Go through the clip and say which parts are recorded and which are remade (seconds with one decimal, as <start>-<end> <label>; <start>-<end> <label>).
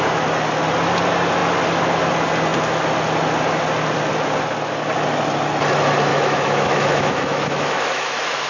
0.0-6.1 recorded; 6.1-8.5 remade